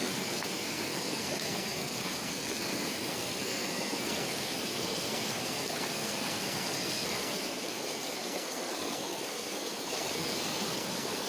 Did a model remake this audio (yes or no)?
yes